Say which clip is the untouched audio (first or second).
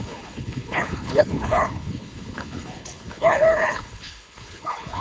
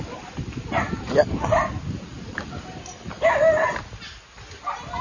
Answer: second